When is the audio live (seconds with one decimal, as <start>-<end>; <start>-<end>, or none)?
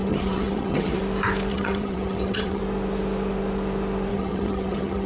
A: 1.0-1.5; 2.6-4.1